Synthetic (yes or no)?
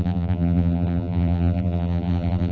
yes